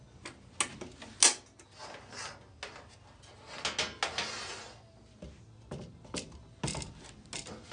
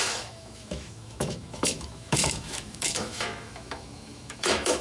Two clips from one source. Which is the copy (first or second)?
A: second